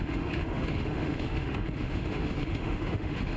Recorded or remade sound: remade